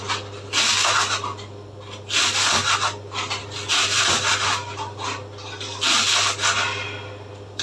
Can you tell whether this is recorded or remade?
recorded